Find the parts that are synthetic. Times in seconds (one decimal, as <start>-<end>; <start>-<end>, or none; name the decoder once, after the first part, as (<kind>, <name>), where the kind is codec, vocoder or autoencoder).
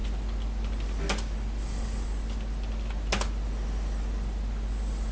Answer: none